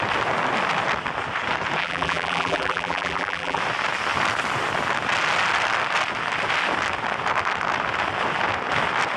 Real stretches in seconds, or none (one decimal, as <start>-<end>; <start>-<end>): 0.0-1.8; 3.6-9.2